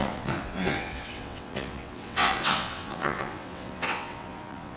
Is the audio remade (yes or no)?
yes